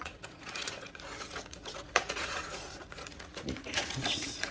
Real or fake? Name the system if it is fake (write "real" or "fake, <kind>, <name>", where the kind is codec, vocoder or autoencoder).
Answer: fake, vocoder, Vocos